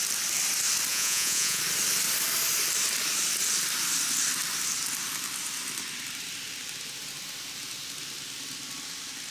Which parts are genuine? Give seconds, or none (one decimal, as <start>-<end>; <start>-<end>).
0.0-0.9; 1.6-9.3